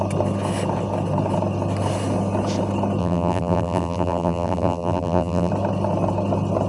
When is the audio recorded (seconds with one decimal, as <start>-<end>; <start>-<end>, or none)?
0.0-3.0; 5.5-6.7